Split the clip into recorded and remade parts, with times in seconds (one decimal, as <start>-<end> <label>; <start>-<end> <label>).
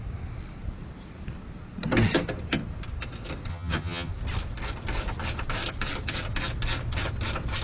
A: 0.0-3.5 recorded; 3.5-4.1 remade; 4.1-7.6 recorded